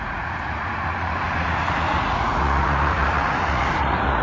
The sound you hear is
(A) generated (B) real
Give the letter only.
A